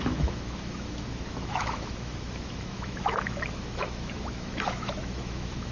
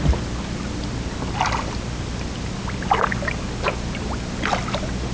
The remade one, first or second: first